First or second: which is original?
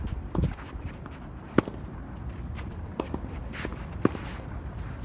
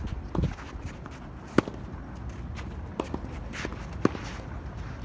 second